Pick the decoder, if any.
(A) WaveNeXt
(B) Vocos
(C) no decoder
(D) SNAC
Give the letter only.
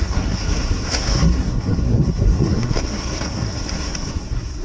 D